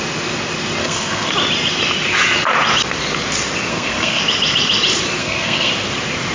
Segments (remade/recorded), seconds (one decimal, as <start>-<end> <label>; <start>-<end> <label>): 0.0-0.8 recorded; 0.8-1.3 remade; 1.3-3.7 recorded; 3.7-4.2 remade; 4.2-5.2 recorded; 5.2-5.7 remade; 5.7-6.3 recorded